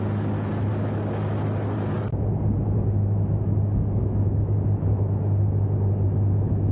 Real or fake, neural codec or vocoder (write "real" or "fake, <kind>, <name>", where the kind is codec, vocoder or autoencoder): real